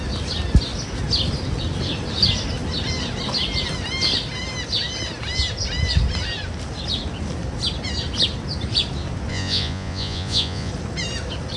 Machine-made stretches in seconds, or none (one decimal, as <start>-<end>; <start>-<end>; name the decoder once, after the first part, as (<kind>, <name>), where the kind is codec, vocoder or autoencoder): 9.3-10.7 (vocoder, Vocos)